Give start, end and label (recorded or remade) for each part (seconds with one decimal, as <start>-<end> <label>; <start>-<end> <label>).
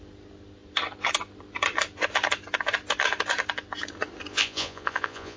0.0-4.3 recorded; 4.3-5.4 remade